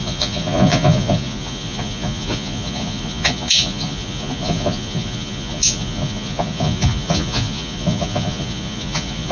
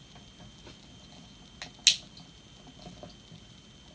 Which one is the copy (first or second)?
first